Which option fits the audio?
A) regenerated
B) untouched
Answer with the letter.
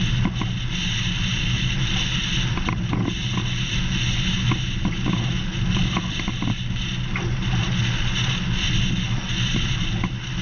B